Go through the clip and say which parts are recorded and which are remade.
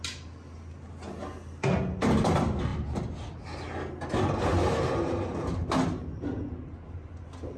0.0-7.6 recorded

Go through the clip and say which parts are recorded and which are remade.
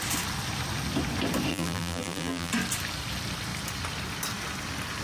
0.0-1.5 recorded; 1.5-2.5 remade; 2.5-5.0 recorded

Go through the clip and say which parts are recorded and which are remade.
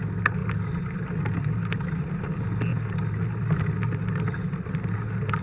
0.0-5.4 recorded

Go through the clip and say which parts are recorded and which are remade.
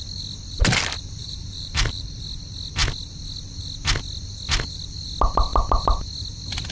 0.0-1.2 recorded; 1.2-2.2 remade; 2.2-6.7 recorded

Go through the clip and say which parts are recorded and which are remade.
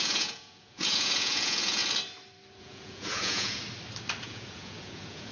0.0-1.8 remade; 1.8-2.6 recorded; 2.6-3.6 remade; 3.6-4.2 recorded; 4.2-5.3 remade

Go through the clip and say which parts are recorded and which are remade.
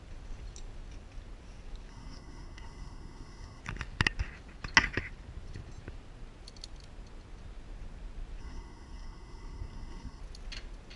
0.0-1.9 recorded; 1.9-3.6 remade; 3.6-8.4 recorded; 8.4-10.2 remade; 10.2-11.0 recorded